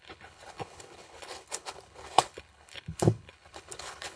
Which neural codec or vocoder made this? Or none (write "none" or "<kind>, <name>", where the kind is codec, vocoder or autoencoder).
codec, HILCodec